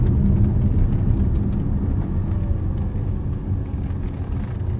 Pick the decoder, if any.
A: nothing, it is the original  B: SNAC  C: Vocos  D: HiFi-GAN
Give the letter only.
A